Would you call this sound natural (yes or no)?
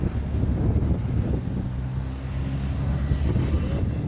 yes